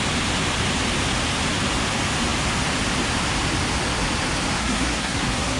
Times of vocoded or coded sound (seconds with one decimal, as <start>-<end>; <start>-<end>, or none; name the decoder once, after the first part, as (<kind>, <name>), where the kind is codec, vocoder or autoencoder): 4.6-5.6 (codec, SNAC)